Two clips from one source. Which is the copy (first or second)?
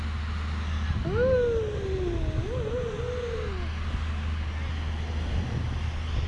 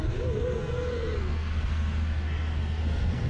second